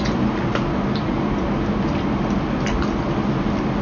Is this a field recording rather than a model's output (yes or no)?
yes